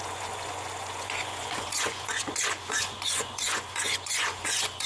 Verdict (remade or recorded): remade